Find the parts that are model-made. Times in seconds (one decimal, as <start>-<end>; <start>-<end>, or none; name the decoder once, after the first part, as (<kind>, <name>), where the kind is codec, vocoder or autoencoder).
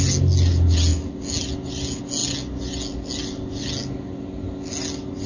none